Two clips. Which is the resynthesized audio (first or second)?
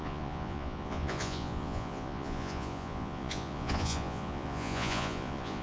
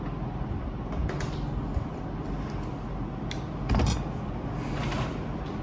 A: first